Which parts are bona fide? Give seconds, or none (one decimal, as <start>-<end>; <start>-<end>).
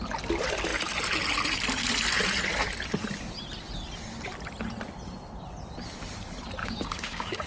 0.0-6.6